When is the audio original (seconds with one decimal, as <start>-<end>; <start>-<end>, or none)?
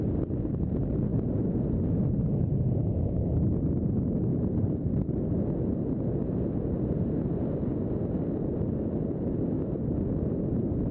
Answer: 0.0-4.3; 5.2-10.9